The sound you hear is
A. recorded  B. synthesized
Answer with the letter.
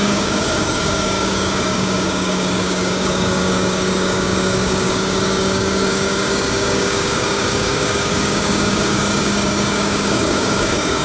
B